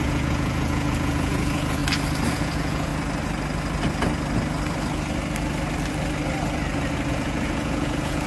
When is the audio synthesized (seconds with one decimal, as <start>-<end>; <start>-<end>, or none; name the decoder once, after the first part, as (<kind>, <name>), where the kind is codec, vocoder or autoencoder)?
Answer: 0.0-1.8 (vocoder, Vocos); 2.3-2.9; 7.1-8.3